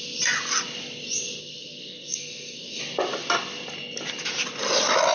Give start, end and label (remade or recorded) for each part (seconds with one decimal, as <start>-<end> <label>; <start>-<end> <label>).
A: 0.0-1.4 recorded; 1.4-2.8 remade; 2.8-5.1 recorded